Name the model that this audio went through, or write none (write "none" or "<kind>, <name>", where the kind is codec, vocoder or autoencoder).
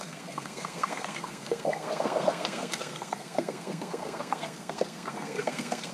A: codec, SNAC